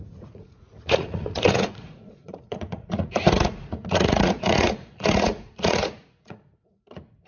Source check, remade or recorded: remade